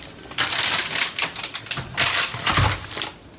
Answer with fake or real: fake